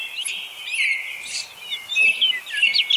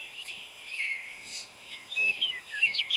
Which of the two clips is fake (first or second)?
second